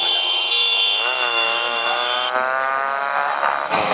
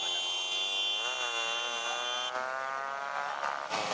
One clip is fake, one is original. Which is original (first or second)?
second